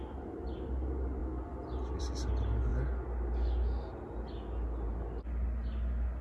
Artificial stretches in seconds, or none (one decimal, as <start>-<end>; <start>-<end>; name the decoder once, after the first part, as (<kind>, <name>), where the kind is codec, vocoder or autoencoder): none